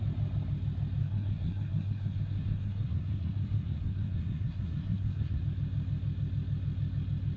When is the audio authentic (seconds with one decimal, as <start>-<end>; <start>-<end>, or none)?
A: 0.0-1.0; 5.4-7.4